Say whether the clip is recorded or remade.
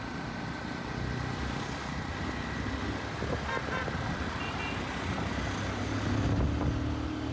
recorded